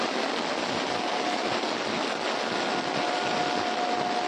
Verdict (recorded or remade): recorded